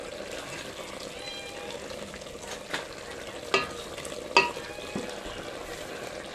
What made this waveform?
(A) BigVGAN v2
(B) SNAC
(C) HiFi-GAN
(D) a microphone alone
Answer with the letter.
D